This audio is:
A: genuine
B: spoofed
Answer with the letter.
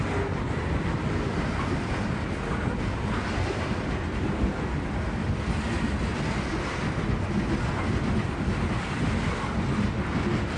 A